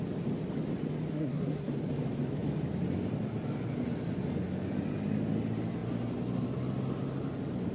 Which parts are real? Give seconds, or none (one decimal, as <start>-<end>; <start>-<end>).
0.0-1.1; 1.7-7.7